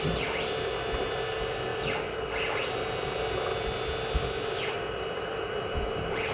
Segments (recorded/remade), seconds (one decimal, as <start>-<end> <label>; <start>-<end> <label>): 0.0-6.3 recorded